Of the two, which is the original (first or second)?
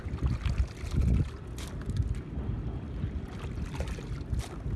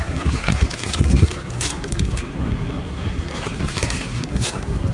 first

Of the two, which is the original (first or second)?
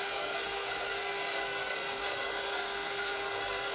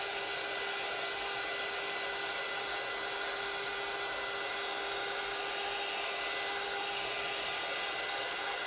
second